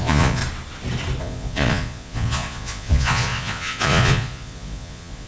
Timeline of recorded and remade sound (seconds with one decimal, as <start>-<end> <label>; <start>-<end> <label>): 0.0-0.4 remade; 0.4-1.2 recorded; 1.2-5.3 remade